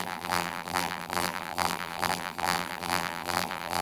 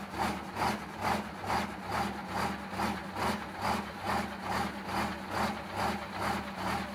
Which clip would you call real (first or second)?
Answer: second